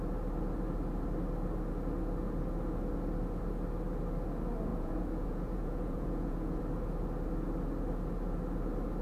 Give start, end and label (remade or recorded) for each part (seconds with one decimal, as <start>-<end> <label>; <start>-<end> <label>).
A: 0.0-4.7 recorded; 4.7-6.6 remade; 6.6-9.0 recorded